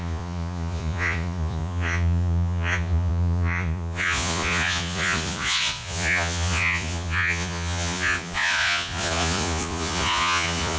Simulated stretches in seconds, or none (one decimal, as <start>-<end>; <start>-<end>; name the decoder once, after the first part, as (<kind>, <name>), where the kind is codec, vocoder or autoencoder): 0.0-10.8 (vocoder, Vocos)

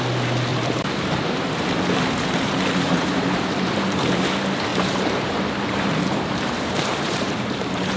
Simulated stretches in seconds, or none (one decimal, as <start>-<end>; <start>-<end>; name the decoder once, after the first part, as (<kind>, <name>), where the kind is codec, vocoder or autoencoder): 0.5-4.2 (vocoder, BigVGAN v2); 4.7-8.0

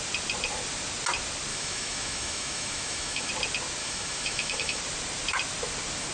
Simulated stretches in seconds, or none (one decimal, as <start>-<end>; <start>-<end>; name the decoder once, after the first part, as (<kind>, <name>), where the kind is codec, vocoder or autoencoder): 1.5-3.3 (autoencoder, DAC-VAE); 3.8-4.8

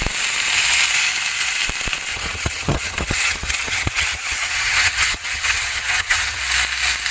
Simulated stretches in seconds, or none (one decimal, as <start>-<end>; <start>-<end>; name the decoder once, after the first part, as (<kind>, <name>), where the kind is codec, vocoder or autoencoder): 2.1-6.4 (vocoder, HiFi-GAN)